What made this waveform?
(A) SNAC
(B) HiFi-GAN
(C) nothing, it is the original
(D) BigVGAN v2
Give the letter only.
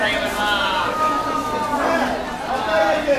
C